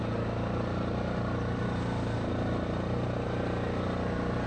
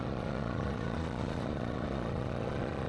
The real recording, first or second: first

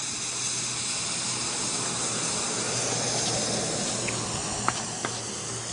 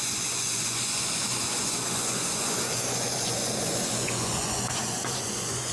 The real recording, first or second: first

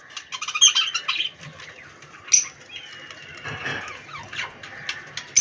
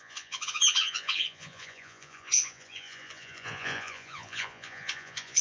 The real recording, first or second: first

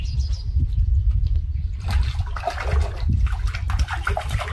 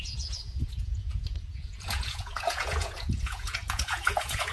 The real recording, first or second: first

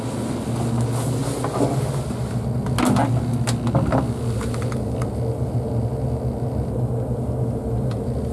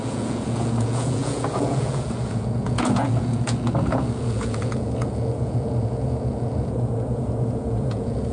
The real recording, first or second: first